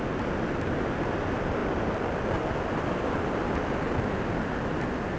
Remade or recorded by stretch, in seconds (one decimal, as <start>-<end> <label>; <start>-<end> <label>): 0.0-5.2 recorded